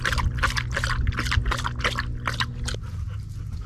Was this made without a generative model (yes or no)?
yes